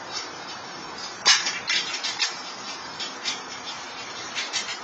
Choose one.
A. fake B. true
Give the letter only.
A